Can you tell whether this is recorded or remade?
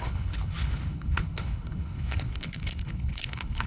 remade